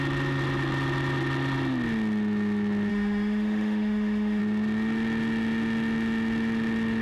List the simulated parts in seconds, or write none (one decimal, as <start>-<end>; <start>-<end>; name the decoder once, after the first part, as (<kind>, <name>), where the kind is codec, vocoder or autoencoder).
2.9-4.4 (autoencoder, DAC-VAE)